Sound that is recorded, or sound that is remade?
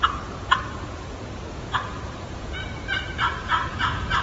remade